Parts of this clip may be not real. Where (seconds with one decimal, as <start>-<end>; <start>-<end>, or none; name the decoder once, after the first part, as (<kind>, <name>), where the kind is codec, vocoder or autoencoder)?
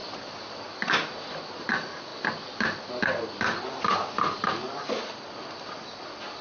none